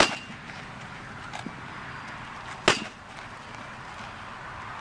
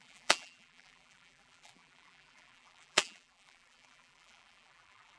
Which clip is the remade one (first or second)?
second